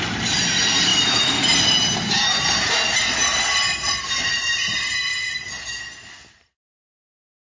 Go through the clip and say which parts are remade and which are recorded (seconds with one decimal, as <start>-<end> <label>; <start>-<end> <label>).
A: 0.0-0.9 remade; 0.9-4.2 recorded; 4.2-5.1 remade; 5.1-6.3 recorded; 6.3-7.4 remade